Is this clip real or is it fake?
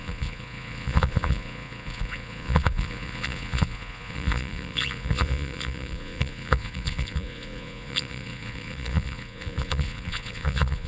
fake